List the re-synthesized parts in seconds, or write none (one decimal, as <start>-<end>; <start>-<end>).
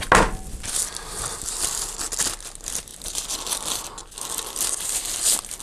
none